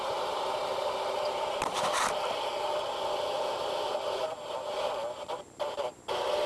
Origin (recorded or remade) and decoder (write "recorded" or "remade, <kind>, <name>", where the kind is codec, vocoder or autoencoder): recorded